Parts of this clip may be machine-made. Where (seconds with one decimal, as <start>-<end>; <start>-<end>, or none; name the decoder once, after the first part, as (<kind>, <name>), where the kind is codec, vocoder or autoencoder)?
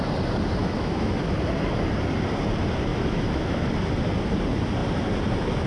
0.6-1.2 (autoencoder, DAC-VAE); 2.9-3.7